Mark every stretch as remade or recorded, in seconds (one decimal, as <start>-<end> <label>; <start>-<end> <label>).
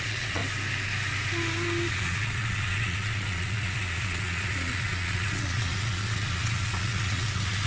0.0-0.4 remade; 0.4-1.9 recorded; 1.9-7.7 remade